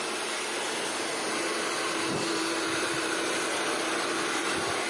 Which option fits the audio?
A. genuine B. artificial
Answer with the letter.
B